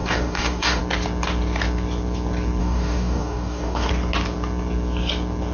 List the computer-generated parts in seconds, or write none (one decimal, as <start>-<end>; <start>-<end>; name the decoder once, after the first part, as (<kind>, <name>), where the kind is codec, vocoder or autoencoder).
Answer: 0.0-0.8 (codec, DAC); 2.6-3.9